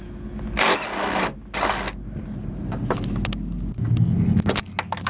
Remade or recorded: recorded